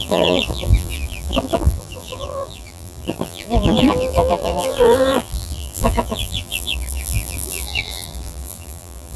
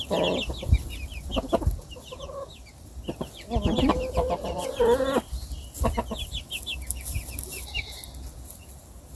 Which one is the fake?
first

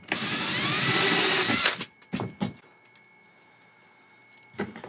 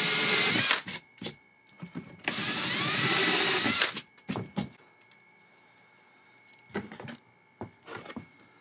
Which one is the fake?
second